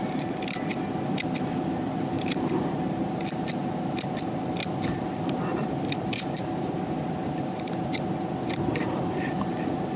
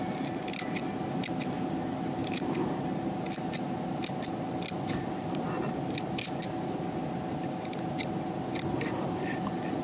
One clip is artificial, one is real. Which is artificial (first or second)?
first